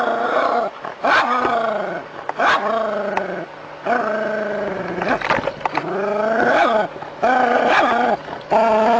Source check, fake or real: real